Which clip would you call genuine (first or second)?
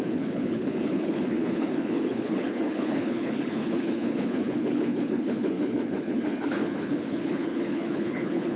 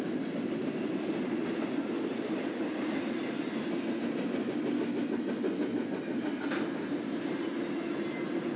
second